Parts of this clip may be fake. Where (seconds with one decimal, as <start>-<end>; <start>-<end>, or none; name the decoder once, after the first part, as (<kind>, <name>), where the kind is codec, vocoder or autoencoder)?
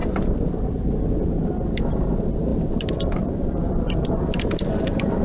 0.9-5.2 (vocoder, BigVGAN v2)